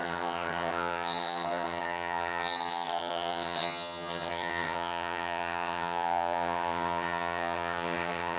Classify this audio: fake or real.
fake